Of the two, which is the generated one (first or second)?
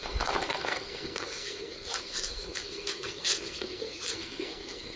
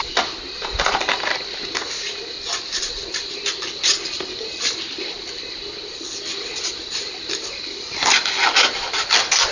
first